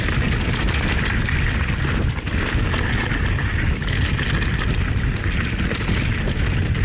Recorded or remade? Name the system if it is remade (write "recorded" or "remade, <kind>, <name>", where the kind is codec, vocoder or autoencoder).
recorded